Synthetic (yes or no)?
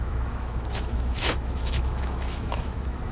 yes